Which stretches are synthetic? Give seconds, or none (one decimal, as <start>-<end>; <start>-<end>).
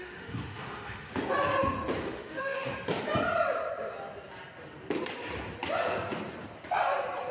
0.0-1.2; 2.0-2.7